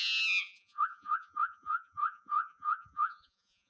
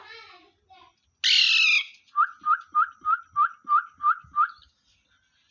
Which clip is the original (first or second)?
second